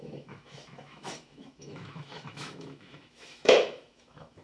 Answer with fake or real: fake